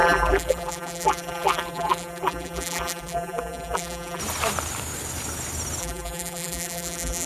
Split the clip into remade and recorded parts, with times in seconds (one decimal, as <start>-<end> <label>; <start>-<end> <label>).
0.0-4.2 remade; 4.2-5.8 recorded; 5.8-7.3 remade